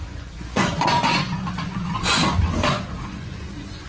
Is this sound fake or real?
fake